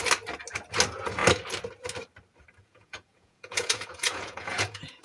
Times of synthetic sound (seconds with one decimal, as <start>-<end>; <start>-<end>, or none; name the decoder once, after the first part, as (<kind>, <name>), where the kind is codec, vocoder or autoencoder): 2.6-5.0 (vocoder, Vocos)

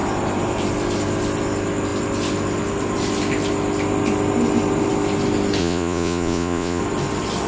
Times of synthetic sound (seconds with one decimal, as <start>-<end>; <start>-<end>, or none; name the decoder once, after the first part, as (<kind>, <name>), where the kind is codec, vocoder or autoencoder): 5.6-6.8 (vocoder, Vocos)

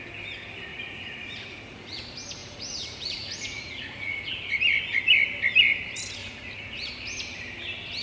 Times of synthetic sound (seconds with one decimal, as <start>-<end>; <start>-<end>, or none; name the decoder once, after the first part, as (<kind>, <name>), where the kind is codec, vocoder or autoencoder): 0.7-2.0 (vocoder, Vocos); 2.4-4.3; 6.2-6.9

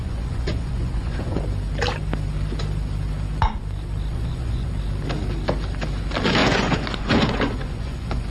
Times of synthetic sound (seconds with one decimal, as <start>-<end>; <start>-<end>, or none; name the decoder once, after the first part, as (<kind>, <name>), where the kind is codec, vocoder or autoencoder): 0.0-1.4 (vocoder, Vocos); 4.1-4.7; 6.4-8.3

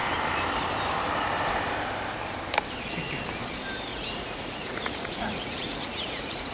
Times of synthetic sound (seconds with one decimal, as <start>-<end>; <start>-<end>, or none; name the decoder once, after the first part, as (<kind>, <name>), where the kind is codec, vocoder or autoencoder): 3.9-6.5 (vocoder, Vocos)